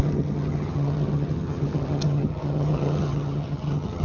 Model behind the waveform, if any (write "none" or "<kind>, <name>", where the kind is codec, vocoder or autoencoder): vocoder, HiFi-GAN